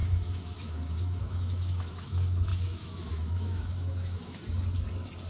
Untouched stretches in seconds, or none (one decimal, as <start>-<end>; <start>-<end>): 4.4-5.3